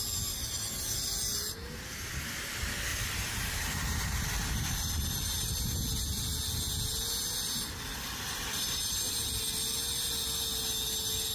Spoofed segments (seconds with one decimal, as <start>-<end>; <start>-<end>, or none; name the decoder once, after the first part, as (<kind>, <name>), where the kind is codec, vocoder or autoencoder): 2.9-4.9 (vocoder, BigVGAN v2)

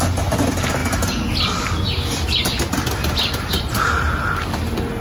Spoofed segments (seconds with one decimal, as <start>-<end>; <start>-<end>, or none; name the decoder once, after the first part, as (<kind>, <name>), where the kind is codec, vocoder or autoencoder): none

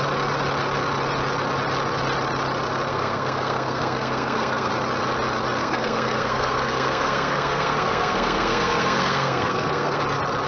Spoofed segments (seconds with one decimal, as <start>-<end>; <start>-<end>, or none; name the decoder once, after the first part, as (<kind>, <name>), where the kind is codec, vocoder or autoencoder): 2.9-4.7 (codec, SNAC); 5.6-10.0

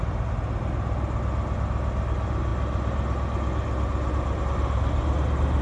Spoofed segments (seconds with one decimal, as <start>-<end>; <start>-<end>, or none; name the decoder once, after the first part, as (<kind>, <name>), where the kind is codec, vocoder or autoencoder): none

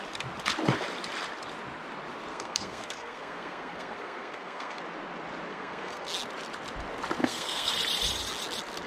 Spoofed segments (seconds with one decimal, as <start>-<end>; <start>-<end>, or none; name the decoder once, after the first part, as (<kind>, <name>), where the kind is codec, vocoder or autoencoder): 2.3-4.8 (codec, SNAC); 5.5-6.1; 7.2-7.7

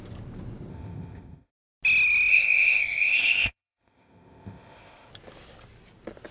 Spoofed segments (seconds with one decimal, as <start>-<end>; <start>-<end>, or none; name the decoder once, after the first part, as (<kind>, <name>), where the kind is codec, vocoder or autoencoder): 0.7-1.5 (codec, ZipCodec); 2.3-5.1